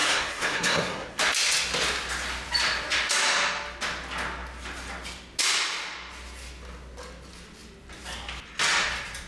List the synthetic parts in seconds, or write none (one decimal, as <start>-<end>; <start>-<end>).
0.0-1.2